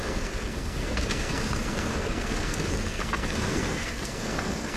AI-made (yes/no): yes